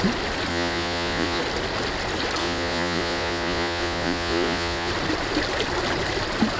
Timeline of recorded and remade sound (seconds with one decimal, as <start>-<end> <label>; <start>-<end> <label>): 0.0-0.5 recorded; 0.5-1.4 remade; 1.4-2.4 recorded; 2.4-4.9 remade; 4.9-6.6 recorded